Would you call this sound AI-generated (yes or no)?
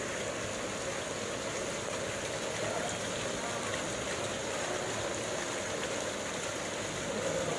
no